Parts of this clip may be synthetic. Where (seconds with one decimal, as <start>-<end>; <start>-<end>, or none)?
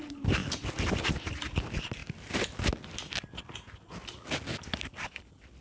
none